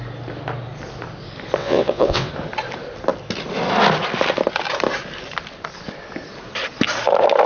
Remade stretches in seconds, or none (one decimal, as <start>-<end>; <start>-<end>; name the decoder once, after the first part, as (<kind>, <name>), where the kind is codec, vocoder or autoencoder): 1.6-2.3 (vocoder, WaveNeXt)